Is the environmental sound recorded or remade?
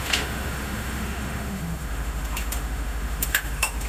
remade